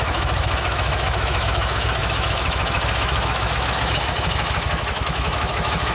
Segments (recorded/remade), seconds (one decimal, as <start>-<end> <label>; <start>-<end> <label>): 0.0-5.9 remade